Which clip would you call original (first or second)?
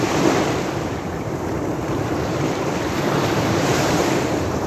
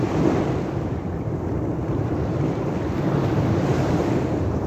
second